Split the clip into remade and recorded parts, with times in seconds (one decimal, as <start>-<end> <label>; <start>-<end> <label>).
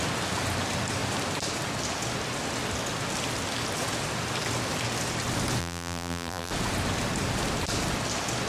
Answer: 0.0-5.6 recorded; 5.6-6.5 remade; 6.5-8.5 recorded